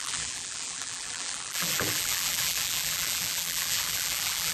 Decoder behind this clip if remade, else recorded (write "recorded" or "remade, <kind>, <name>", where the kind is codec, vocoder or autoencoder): remade, vocoder, BigVGAN v2